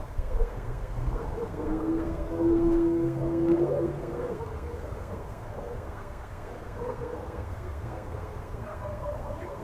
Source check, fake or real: fake